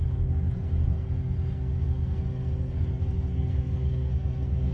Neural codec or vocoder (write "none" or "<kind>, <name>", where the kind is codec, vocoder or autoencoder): codec, SNAC